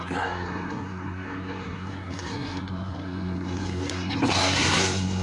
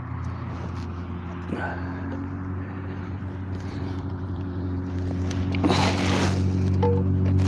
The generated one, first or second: first